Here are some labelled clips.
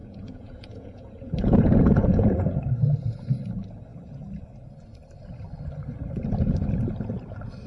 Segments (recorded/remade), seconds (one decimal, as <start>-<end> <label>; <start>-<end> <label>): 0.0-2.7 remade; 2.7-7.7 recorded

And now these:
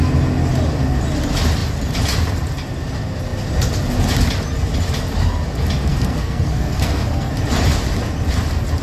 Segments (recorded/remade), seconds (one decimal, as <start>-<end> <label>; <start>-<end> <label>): 0.0-5.9 recorded; 5.9-7.3 remade; 7.3-8.8 recorded

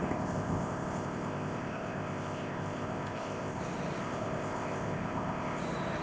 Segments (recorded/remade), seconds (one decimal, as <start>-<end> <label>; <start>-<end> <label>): 0.0-3.6 remade; 3.6-4.0 recorded; 4.0-5.6 remade; 5.6-6.0 recorded

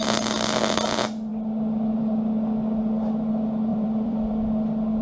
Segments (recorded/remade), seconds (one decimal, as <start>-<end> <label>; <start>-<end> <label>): 0.0-3.7 recorded; 3.7-4.3 remade; 4.3-5.0 recorded